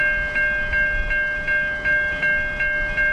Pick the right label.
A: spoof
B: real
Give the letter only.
B